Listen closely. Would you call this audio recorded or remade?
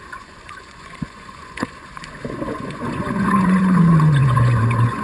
remade